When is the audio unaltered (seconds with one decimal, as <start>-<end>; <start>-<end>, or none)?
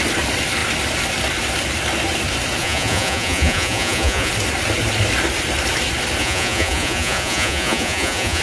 0.0-2.6; 4.3-6.2